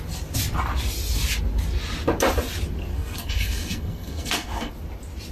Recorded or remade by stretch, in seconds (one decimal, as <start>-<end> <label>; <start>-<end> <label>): 0.0-2.9 recorded; 2.9-4.7 remade; 4.7-5.3 recorded